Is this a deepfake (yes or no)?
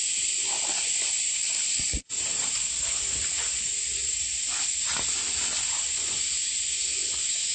yes